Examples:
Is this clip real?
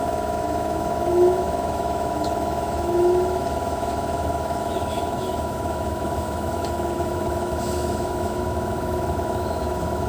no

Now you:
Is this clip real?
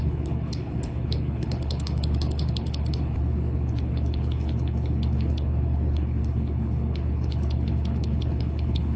no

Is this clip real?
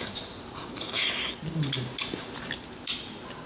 yes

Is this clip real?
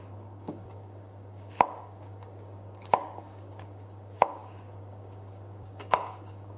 no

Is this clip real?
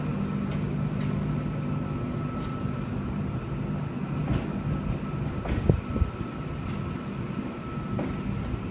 yes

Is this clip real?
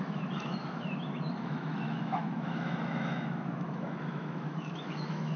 no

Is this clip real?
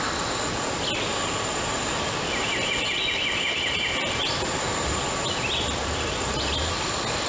yes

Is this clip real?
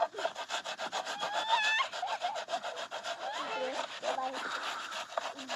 yes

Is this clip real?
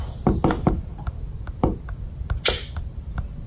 yes